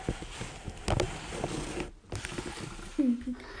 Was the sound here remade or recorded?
recorded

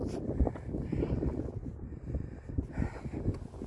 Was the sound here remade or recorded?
recorded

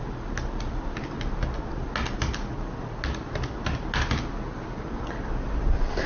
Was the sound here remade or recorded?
recorded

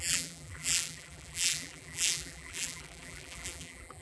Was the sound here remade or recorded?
remade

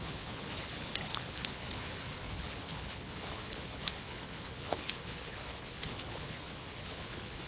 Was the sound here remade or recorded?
remade